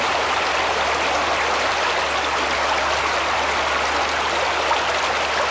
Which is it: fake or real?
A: real